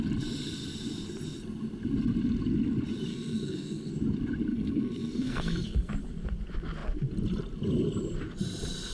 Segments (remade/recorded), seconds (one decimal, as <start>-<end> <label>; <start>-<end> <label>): 0.0-3.1 recorded; 3.1-3.9 remade; 3.9-4.5 recorded; 4.5-5.9 remade; 5.9-8.9 recorded